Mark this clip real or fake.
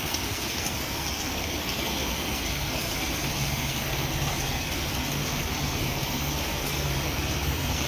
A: fake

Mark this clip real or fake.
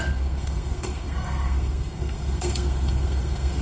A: fake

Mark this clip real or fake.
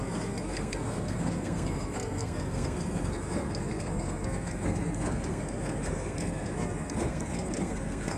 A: fake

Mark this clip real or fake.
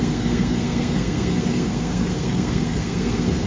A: fake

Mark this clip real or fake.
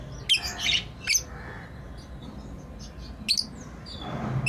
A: real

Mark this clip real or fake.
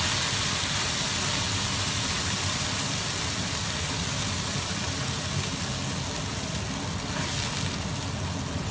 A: real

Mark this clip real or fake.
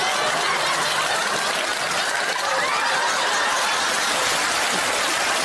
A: real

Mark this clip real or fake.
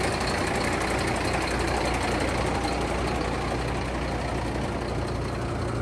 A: real